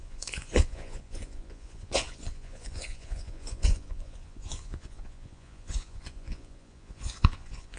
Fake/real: fake